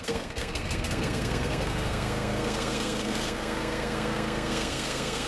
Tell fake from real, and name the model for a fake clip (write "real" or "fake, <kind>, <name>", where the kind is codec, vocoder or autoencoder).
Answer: fake, codec, SNAC